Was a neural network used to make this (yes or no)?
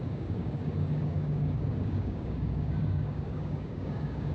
yes